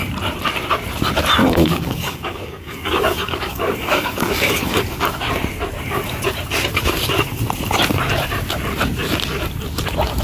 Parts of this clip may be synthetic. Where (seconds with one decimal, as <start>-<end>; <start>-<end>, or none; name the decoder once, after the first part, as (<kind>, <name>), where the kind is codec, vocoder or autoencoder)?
1.4-5.2 (codec, DAC)